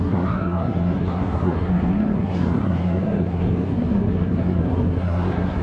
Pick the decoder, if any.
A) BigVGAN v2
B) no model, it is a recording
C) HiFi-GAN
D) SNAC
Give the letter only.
D